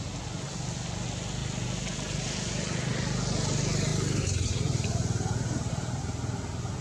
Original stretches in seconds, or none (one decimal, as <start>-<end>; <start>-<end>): 0.0-6.8